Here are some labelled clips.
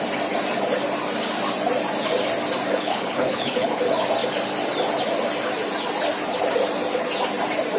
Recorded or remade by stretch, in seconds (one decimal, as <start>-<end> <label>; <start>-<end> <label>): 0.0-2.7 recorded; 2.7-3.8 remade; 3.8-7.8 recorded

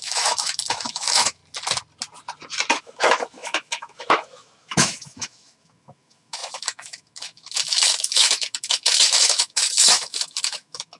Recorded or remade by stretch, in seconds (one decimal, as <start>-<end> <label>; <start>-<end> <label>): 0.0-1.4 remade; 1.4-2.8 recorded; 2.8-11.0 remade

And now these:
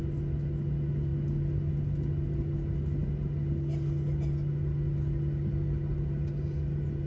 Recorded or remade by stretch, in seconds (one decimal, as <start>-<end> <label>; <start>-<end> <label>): 0.0-7.1 recorded

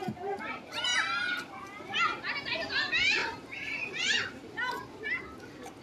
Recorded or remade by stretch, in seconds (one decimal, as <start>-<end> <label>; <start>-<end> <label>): 0.0-3.2 recorded; 3.2-5.2 remade; 5.2-5.8 recorded

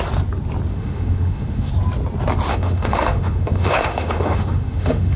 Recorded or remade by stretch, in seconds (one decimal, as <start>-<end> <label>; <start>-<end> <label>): 0.0-0.7 recorded; 0.7-1.7 remade; 1.7-2.5 recorded; 2.5-5.2 remade